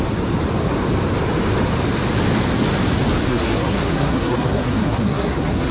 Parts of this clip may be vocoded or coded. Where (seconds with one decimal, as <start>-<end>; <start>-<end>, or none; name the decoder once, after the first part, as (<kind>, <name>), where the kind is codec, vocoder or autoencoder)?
3.3-5.7 (codec, SNAC)